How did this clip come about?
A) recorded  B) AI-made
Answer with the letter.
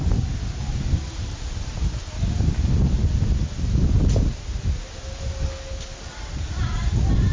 A